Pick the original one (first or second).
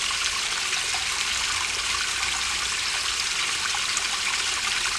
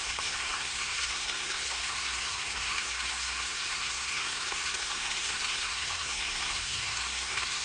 first